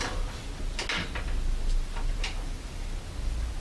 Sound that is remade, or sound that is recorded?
recorded